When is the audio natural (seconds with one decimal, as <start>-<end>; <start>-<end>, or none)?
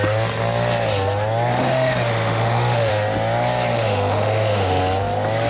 0.0-1.5; 2.9-3.7; 4.8-5.5